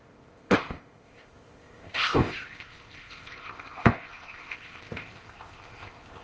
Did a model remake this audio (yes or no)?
yes